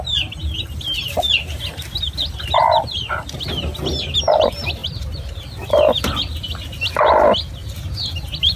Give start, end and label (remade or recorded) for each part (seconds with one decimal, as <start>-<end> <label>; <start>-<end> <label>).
0.0-2.6 recorded; 2.6-3.2 remade; 3.2-4.8 recorded; 4.8-5.4 remade; 5.4-7.6 recorded; 7.6-8.6 remade